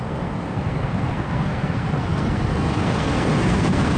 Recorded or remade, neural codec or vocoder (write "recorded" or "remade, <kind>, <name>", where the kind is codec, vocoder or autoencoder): remade, codec, SNAC